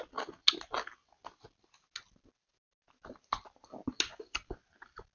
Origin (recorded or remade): recorded